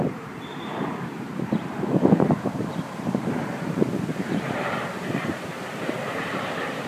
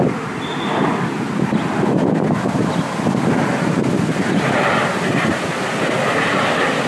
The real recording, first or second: second